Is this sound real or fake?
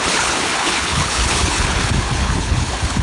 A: fake